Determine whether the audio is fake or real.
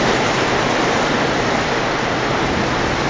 real